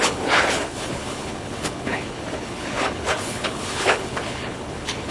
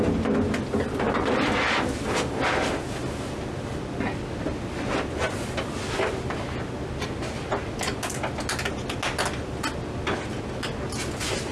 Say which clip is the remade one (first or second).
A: first